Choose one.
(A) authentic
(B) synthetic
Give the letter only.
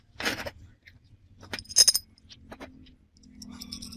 A